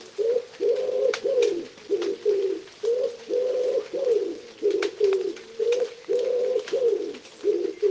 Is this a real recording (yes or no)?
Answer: yes